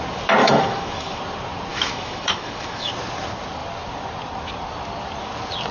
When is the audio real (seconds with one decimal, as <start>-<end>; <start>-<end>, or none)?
0.0-0.4; 1.2-1.7; 2.9-5.7